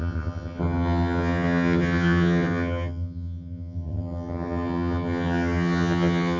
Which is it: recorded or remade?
remade